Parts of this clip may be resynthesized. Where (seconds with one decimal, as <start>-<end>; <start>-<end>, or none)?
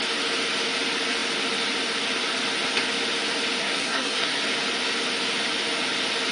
3.6-4.4